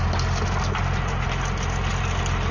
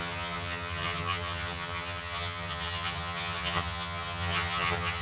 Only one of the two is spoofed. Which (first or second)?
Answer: second